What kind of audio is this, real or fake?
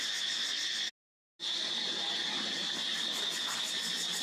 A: real